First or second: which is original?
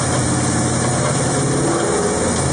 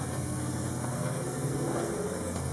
first